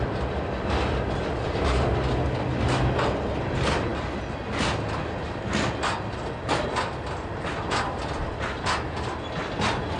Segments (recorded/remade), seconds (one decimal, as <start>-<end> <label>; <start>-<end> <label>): 0.0-10.0 recorded